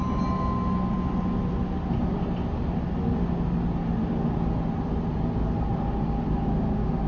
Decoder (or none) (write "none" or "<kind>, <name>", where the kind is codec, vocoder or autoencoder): none